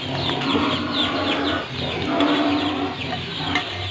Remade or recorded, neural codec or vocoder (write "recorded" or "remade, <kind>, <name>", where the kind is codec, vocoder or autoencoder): recorded